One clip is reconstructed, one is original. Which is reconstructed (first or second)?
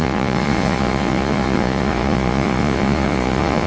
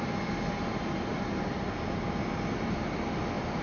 first